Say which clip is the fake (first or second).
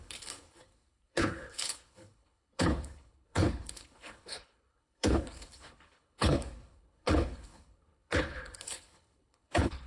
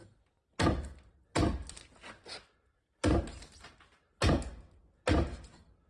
first